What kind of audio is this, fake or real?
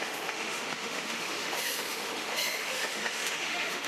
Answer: fake